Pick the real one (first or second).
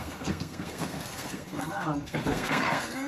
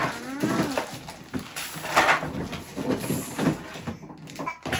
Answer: second